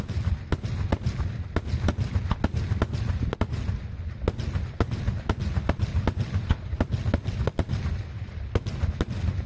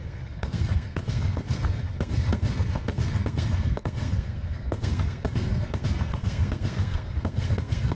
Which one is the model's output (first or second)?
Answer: second